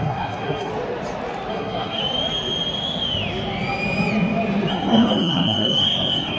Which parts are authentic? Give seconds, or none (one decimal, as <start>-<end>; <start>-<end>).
0.7-1.5; 2.0-4.7